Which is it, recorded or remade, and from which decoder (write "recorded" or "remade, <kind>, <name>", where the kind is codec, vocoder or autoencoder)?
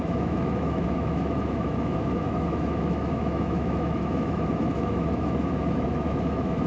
remade, autoencoder, DAC-VAE